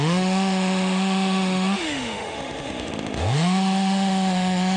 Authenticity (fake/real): fake